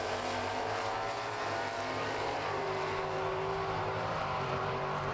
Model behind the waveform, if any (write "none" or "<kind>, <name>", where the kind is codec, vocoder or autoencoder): vocoder, BigVGAN v2